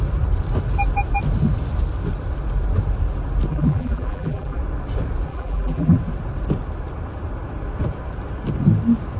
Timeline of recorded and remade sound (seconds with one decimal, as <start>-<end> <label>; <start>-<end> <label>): 0.0-3.5 recorded; 3.5-4.6 remade; 4.6-5.3 recorded; 5.3-6.0 remade; 6.0-9.2 recorded

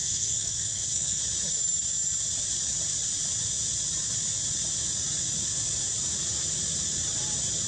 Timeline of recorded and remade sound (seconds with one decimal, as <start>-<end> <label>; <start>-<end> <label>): 0.0-1.2 remade; 1.2-7.7 recorded